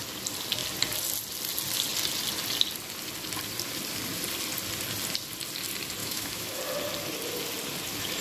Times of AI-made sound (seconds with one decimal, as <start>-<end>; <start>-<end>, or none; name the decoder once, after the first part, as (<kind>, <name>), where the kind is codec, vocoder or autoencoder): 6.0-6.6 (autoencoder, DAC-VAE)

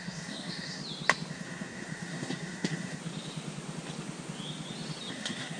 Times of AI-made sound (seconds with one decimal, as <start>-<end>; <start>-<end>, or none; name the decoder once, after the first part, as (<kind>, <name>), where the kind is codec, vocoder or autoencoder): 0.0-0.8 (codec, SNAC); 1.3-3.0; 5.1-5.6

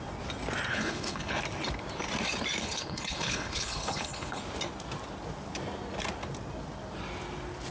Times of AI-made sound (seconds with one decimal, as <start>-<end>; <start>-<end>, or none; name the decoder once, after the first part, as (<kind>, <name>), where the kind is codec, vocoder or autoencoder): 0.7-1.4 (codec, HILCodec); 2.6-4.4

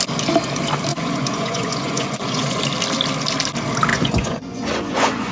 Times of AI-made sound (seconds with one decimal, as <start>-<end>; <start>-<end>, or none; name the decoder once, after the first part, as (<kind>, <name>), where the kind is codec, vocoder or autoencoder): 0.9-2.6 (vocoder, Vocos); 3.9-5.3